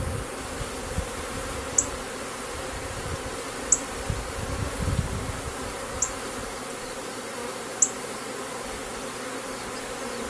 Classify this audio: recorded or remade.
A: recorded